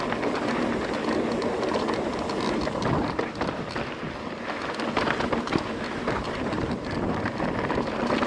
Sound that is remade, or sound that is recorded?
recorded